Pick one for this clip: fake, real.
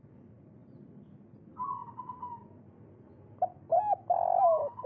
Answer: real